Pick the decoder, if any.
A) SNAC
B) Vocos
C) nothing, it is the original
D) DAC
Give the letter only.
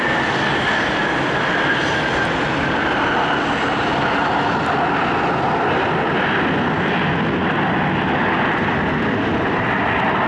C